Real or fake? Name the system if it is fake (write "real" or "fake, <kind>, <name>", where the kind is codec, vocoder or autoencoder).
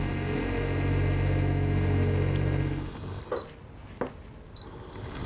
real